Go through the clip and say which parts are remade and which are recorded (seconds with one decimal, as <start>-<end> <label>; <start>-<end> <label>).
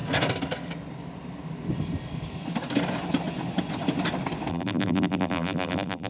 0.0-4.5 recorded; 4.5-6.1 remade